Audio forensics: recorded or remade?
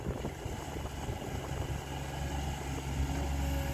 recorded